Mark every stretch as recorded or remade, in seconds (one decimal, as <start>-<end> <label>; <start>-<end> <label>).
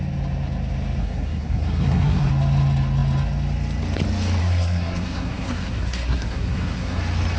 0.0-1.0 recorded; 1.0-2.3 remade; 2.3-4.4 recorded; 4.4-7.0 remade; 7.0-7.4 recorded